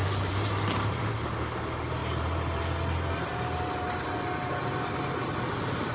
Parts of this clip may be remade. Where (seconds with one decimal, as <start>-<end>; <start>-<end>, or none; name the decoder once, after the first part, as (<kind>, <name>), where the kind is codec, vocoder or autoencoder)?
0.0-1.1 (vocoder, BigVGAN v2); 2.0-2.6